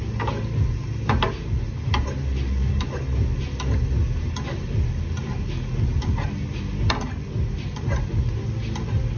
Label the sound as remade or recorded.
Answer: recorded